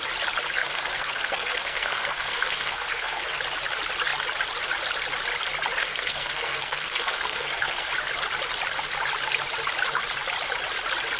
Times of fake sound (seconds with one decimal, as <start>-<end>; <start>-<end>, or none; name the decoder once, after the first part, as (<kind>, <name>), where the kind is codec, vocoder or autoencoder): 0.6-3.4 (codec, SNAC); 5.8-7.9

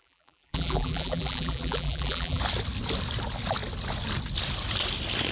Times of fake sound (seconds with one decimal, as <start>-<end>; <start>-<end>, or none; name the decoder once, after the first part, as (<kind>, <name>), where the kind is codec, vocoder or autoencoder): 0.0-2.4 (vocoder, BigVGAN v2)